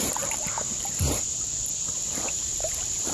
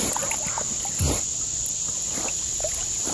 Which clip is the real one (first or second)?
second